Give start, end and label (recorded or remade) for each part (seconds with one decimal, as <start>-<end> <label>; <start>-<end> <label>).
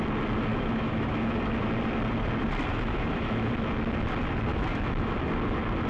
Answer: 0.0-0.5 recorded; 0.5-1.4 remade; 1.4-2.7 recorded; 2.7-3.5 remade; 3.5-4.5 recorded; 4.5-5.2 remade; 5.2-5.9 recorded